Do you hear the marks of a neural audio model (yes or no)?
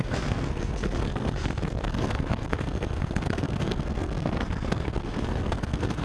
yes